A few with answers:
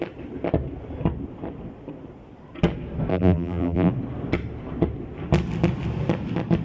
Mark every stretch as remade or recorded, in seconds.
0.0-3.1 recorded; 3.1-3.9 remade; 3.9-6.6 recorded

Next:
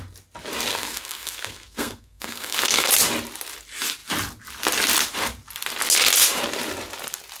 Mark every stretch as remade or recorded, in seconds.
0.0-0.7 recorded; 0.7-2.9 remade; 2.9-7.4 recorded

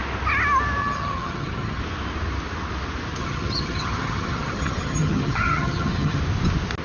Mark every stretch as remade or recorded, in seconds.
0.0-0.8 recorded; 0.8-1.8 remade; 1.8-3.2 recorded; 3.2-6.2 remade; 6.2-6.8 recorded

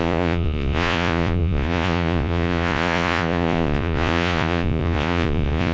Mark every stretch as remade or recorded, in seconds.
0.0-5.7 remade

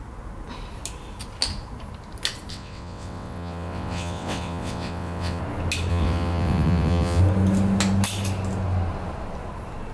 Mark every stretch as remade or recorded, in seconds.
0.0-2.5 recorded; 2.5-5.4 remade; 5.4-5.9 recorded; 5.9-7.2 remade; 7.2-9.9 recorded

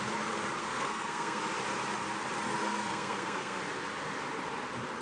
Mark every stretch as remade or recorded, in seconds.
0.0-0.6 recorded; 0.6-1.4 remade; 1.4-2.6 recorded; 2.6-3.6 remade; 3.6-5.0 recorded

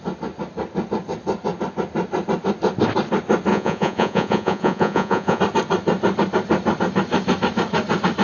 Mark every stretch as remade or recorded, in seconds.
0.0-3.5 recorded; 3.5-5.4 remade; 5.4-8.2 recorded

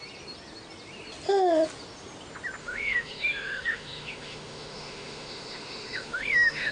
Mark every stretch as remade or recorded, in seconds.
0.0-2.6 recorded; 2.6-6.7 remade